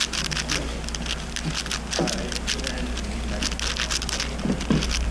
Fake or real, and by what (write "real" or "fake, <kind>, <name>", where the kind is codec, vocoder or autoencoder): real